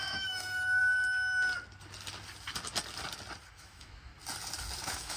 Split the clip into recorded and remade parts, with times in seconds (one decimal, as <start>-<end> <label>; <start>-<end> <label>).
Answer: 0.0-0.8 remade; 0.8-3.5 recorded; 3.5-4.1 remade; 4.1-4.8 recorded; 4.8-5.2 remade